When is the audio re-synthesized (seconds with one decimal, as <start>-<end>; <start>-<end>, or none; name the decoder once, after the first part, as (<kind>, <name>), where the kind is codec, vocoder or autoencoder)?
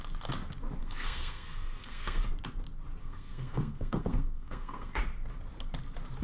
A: 0.8-2.2 (codec, SNAC); 3.0-5.0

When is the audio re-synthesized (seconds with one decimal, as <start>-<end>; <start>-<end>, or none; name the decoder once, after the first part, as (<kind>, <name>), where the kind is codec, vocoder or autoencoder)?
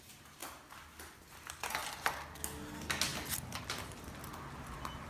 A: none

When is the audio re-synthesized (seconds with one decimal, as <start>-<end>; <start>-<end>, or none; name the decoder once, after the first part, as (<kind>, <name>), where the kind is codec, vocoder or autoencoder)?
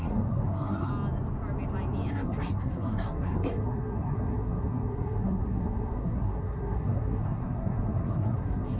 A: 0.0-0.9 (codec, SNAC); 2.1-8.8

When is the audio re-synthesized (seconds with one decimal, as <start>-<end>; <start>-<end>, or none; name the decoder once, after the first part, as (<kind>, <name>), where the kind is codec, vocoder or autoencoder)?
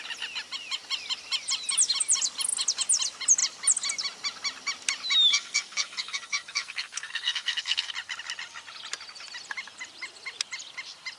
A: 5.3-7.9 (codec, SNAC)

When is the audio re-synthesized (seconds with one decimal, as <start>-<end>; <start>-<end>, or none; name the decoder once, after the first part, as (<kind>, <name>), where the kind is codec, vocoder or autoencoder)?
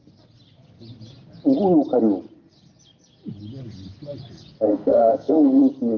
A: 4.7-5.6 (codec, SNAC)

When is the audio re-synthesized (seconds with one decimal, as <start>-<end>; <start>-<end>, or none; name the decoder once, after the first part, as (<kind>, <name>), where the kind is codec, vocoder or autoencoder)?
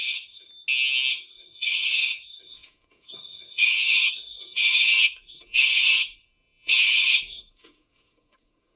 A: 0.0-0.5 (codec, SNAC); 1.1-8.8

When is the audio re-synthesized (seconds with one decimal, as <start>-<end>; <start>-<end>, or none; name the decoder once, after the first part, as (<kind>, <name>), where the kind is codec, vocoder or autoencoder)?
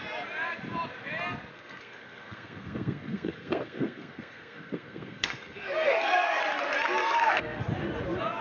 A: 1.5-6.4 (codec, SNAC); 7.0-7.6